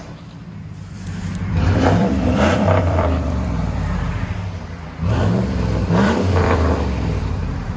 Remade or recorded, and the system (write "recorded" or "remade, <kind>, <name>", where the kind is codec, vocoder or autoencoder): remade, vocoder, BigVGAN v2